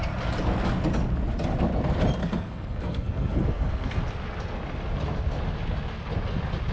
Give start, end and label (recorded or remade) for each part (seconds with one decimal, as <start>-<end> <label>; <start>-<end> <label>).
0.0-2.2 recorded; 2.2-4.0 remade; 4.0-6.7 recorded